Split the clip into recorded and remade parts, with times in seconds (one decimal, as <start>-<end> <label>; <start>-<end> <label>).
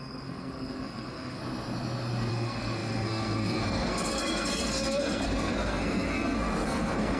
0.0-1.4 remade; 1.4-2.3 recorded; 2.3-7.2 remade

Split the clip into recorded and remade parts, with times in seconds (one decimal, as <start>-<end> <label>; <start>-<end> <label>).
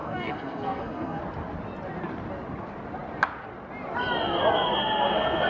0.0-1.2 remade; 1.2-5.5 recorded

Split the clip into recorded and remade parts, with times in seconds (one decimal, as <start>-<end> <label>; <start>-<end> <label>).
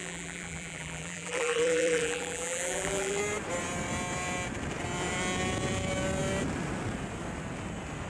0.0-3.2 remade; 3.2-8.1 recorded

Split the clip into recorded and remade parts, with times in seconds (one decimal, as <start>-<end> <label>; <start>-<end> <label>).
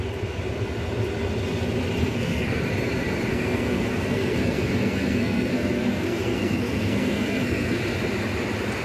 0.0-2.0 recorded; 2.0-2.6 remade; 2.6-3.3 recorded; 3.3-7.8 remade; 7.8-8.8 recorded